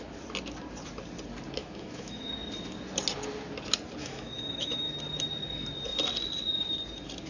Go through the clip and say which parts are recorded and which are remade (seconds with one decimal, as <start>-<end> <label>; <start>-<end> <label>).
0.0-1.6 recorded; 1.6-2.3 remade; 2.3-4.0 recorded; 4.0-4.9 remade; 4.9-7.3 recorded